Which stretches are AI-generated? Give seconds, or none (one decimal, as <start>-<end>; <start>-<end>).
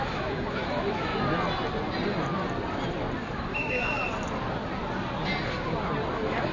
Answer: 0.0-1.1; 3.3-4.0; 6.1-6.5